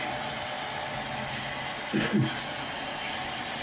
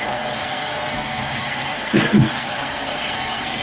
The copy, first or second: second